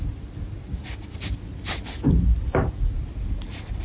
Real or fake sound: real